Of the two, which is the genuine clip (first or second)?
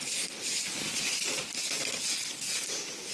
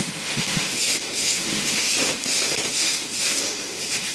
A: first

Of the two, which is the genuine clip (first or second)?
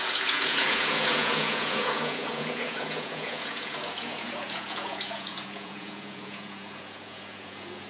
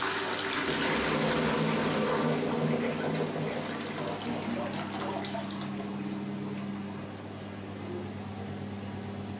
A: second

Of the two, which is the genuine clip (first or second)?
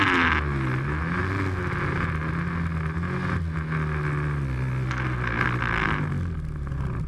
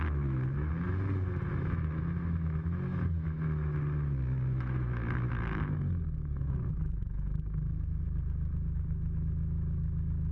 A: first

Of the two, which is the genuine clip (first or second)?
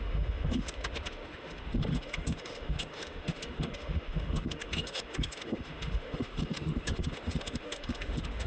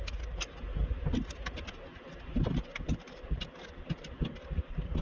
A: second